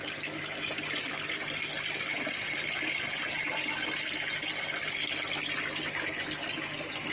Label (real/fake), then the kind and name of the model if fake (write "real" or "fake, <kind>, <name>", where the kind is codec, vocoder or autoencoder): real